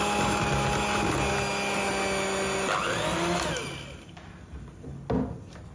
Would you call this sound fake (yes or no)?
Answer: no